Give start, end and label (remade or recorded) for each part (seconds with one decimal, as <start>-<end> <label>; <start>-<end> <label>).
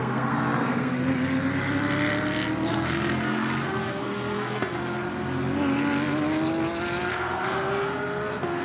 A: 0.0-1.1 remade; 1.1-2.7 recorded; 2.7-4.8 remade; 4.8-7.1 recorded; 7.1-8.6 remade